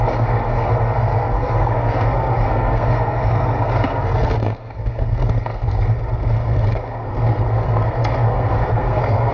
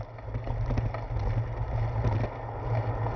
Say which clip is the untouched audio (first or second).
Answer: second